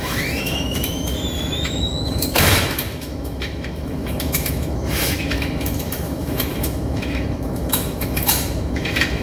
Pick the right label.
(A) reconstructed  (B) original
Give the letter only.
A